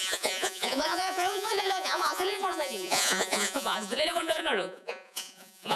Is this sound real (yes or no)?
no